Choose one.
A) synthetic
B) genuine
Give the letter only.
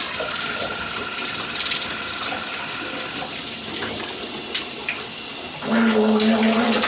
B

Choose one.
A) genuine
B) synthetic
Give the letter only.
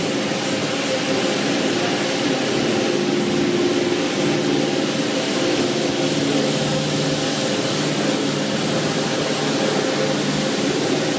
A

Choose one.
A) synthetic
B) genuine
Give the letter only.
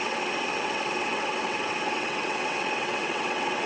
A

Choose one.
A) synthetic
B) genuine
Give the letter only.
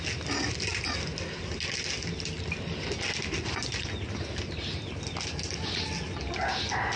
B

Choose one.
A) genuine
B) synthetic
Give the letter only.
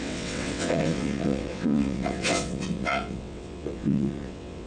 B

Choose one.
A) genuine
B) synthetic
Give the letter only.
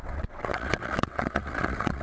B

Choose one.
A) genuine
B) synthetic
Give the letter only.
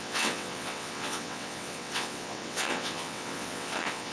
B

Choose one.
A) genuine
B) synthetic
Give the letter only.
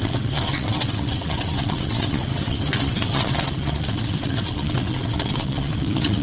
B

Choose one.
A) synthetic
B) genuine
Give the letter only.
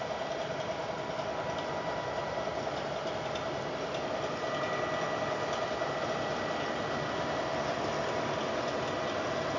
B